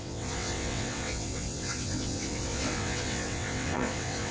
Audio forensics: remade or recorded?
remade